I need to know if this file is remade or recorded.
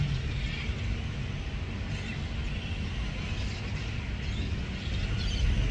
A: recorded